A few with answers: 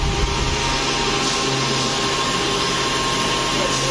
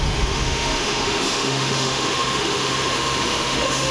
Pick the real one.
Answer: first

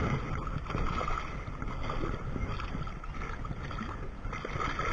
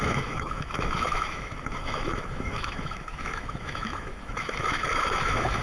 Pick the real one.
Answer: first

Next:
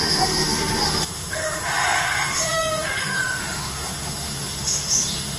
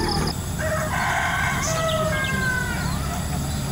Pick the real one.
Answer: second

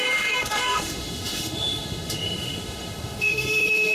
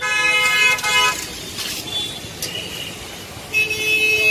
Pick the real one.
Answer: second